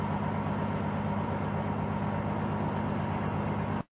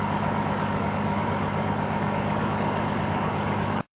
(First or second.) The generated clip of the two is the second